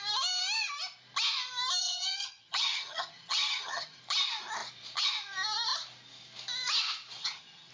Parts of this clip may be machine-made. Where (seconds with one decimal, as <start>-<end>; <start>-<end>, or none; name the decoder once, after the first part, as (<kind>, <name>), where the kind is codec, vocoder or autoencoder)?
1.8-4.0 (vocoder, HiFi-GAN); 7.2-7.7